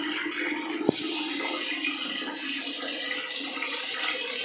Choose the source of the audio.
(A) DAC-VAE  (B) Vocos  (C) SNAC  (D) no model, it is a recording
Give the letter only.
D